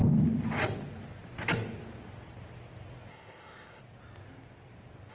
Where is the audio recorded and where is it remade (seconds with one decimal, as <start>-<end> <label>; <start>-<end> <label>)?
0.0-3.1 recorded; 3.1-3.8 remade; 3.8-5.1 recorded